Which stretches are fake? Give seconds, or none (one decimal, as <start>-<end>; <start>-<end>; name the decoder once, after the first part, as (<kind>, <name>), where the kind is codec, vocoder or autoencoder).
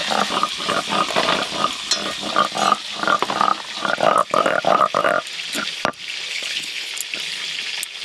6.3-6.9 (codec, HILCodec)